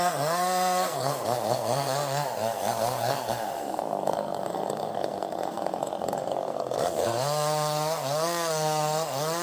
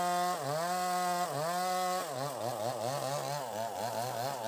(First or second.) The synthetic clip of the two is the first